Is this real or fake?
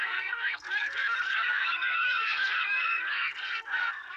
fake